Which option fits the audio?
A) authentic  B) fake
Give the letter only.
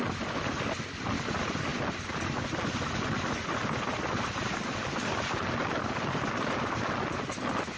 A